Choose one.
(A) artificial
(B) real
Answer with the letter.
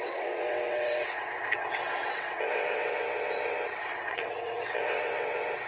A